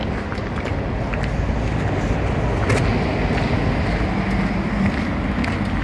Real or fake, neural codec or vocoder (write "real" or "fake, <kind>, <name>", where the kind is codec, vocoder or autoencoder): real